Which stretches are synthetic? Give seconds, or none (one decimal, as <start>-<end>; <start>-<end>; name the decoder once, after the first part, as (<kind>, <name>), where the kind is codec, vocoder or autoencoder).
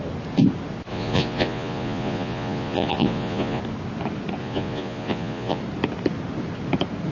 0.9-3.6 (vocoder, Vocos); 4.4-5.6